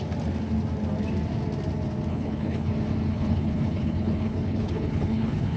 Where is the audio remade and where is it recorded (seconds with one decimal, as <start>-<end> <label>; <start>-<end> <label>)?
0.0-2.1 recorded; 2.1-2.7 remade; 2.7-3.1 recorded; 3.1-5.6 remade